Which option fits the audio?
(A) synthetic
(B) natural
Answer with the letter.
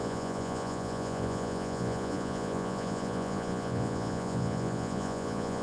A